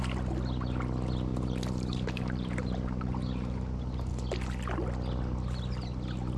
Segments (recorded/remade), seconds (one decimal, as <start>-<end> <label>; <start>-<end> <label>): 0.0-1.3 recorded; 1.3-4.1 remade; 4.1-6.4 recorded